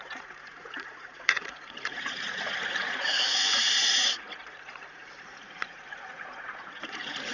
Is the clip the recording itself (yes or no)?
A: no